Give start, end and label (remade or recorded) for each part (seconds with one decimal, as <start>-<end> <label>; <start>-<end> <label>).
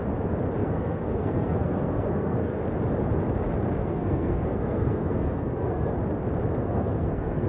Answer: 0.0-0.6 recorded; 0.6-2.6 remade; 2.6-3.8 recorded; 3.8-5.9 remade; 5.9-6.6 recorded; 6.6-7.5 remade